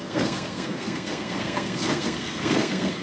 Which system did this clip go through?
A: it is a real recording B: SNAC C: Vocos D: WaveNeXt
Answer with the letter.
B